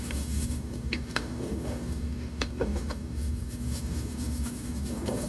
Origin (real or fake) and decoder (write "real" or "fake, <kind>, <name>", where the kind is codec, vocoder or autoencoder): fake, codec, DAC